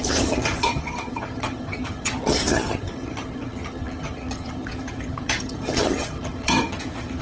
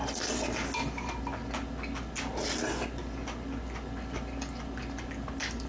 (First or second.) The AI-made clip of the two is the first